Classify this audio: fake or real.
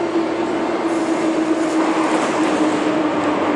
real